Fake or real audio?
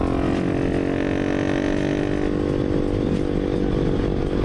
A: real